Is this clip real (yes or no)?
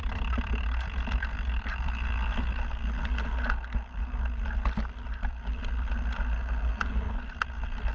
yes